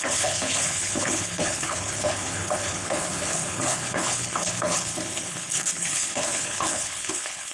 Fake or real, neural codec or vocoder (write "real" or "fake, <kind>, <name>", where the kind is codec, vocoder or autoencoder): fake, codec, HILCodec